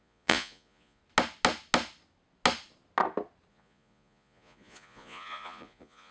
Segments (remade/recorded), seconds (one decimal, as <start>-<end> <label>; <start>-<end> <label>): 0.0-1.0 remade; 1.0-3.5 recorded; 3.5-6.1 remade